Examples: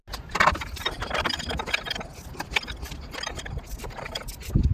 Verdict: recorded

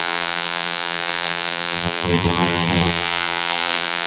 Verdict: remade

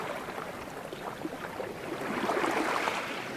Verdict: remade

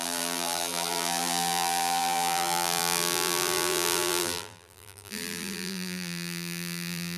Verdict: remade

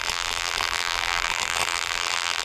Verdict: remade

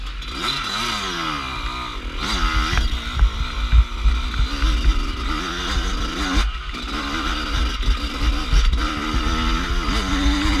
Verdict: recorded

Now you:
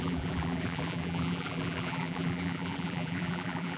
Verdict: remade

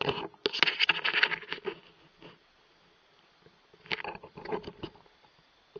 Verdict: recorded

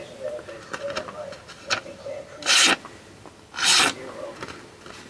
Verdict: recorded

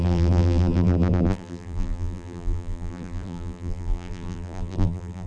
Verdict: remade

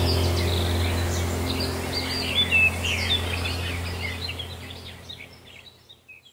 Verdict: recorded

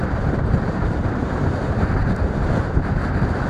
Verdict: remade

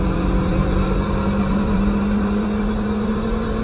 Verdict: remade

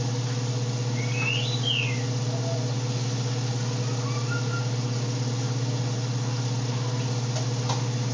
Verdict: recorded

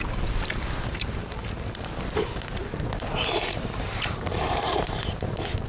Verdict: remade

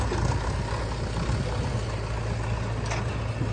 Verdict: recorded